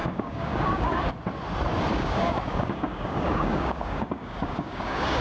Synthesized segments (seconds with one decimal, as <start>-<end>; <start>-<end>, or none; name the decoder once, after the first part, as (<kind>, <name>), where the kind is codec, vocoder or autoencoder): 0.0-1.1 (codec, DAC); 1.9-5.2